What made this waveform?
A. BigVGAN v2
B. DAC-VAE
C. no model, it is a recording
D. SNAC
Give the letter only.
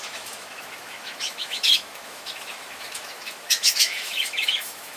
B